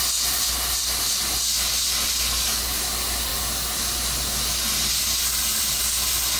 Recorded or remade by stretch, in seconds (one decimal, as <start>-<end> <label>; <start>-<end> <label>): 0.0-2.3 recorded; 2.3-2.8 remade; 2.8-6.4 recorded